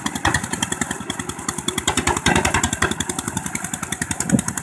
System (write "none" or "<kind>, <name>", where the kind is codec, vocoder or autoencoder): none